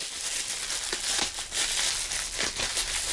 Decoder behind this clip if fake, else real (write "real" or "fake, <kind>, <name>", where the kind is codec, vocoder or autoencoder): real